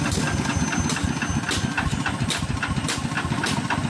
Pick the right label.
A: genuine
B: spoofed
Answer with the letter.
A